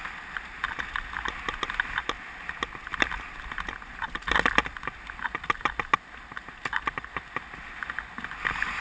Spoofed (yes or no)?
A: no